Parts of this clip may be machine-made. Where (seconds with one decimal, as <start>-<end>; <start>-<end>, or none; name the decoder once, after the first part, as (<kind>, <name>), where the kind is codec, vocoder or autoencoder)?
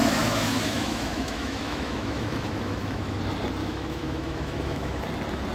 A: 0.0-3.2 (autoencoder, DAC-VAE); 3.6-5.0